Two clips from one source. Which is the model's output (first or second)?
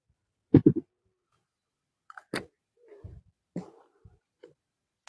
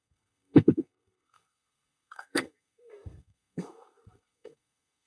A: second